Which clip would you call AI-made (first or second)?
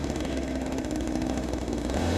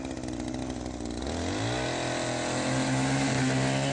first